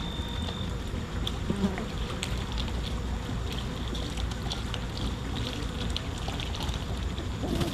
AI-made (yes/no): no